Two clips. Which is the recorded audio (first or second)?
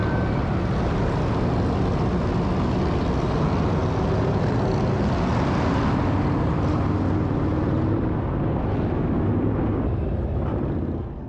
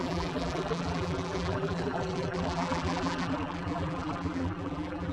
first